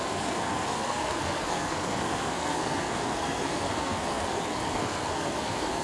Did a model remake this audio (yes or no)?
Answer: yes